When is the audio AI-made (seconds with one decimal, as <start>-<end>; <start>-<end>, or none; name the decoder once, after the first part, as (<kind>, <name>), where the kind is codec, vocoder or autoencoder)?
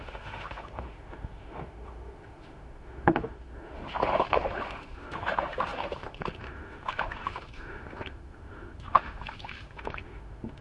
0.0-10.6 (autoencoder, DAC-VAE)